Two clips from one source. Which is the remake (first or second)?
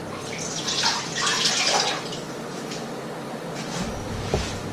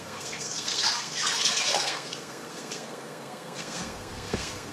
second